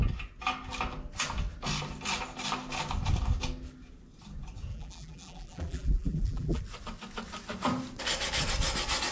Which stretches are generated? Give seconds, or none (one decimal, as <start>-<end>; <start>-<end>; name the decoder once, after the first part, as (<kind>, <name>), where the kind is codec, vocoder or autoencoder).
4.7-6.6 (vocoder, BigVGAN v2)